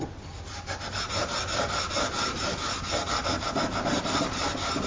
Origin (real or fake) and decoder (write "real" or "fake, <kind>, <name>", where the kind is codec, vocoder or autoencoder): real